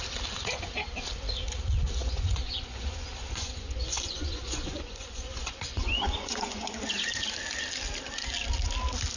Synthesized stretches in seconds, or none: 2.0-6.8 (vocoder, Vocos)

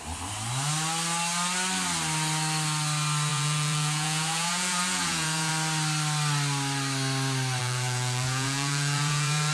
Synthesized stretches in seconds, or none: 3.3-5.5 (vocoder, Vocos); 7.6-9.5

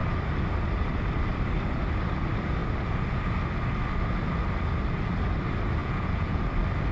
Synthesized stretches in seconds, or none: 5.8-6.4 (vocoder, Vocos)

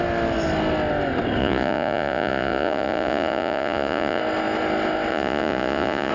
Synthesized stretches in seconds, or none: 1.4-4.2 (vocoder, Vocos); 5.1-6.1

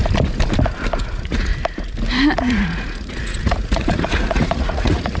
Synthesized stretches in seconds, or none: 1.0-1.5 (vocoder, Vocos); 2.4-5.2

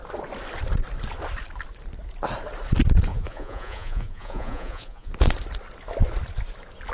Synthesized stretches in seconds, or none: 3.1-5.1 (vocoder, Vocos)

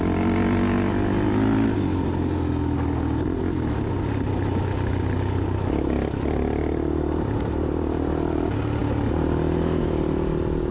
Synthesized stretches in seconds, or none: none

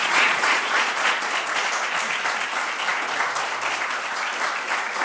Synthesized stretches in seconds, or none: 0.0-1.2 (vocoder, Vocos)